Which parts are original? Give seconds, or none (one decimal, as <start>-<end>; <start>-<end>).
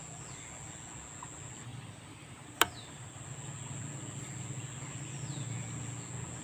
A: 0.0-6.4